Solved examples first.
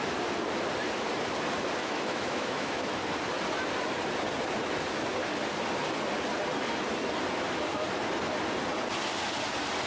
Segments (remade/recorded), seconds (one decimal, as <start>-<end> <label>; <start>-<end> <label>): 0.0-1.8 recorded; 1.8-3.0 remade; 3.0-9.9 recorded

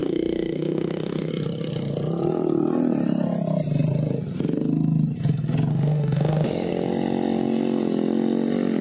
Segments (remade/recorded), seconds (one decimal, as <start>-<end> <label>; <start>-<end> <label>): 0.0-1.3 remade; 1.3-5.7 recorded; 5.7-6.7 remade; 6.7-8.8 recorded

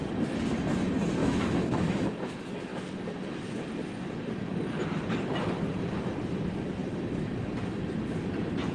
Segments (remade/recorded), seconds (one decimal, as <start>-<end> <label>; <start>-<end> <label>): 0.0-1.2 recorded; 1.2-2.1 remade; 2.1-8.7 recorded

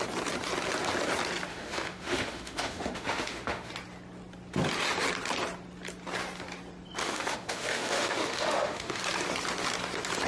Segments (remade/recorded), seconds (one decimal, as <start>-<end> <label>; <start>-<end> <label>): 0.0-1.5 recorded; 1.5-3.7 remade; 3.7-7.0 recorded; 7.0-9.0 remade; 9.0-10.3 recorded

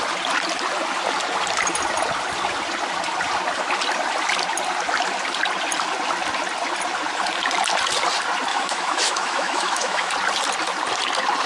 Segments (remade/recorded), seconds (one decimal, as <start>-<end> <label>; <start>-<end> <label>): 0.0-8.5 recorded; 8.5-10.1 remade; 10.1-11.5 recorded